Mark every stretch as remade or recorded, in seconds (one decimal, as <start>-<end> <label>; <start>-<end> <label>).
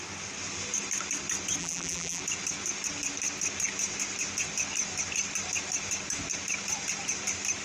0.0-1.6 recorded; 1.6-2.2 remade; 2.2-7.6 recorded